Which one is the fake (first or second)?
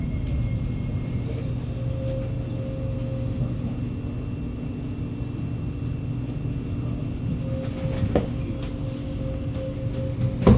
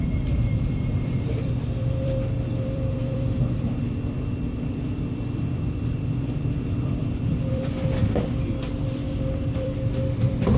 second